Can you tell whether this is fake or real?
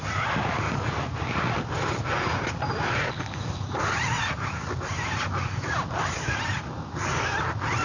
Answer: real